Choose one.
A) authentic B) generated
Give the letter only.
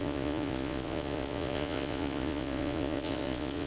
B